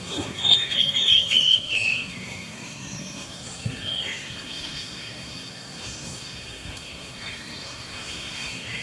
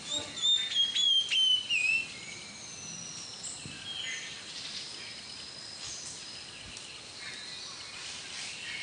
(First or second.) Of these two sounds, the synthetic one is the first